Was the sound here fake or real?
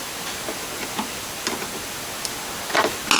real